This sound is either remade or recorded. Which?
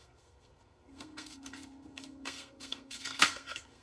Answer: remade